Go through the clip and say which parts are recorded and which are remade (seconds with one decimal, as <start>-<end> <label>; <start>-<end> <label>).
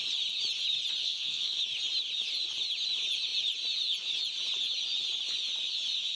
0.0-1.0 recorded; 1.0-1.6 remade; 1.6-6.2 recorded